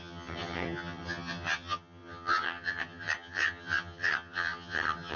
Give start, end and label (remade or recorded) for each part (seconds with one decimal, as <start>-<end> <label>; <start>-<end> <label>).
0.0-5.2 remade